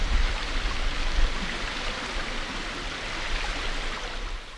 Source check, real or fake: real